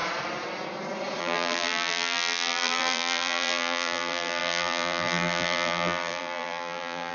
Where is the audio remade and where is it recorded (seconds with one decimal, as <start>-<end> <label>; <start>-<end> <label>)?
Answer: 0.0-1.2 recorded; 1.2-7.1 remade